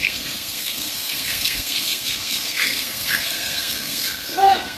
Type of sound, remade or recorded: remade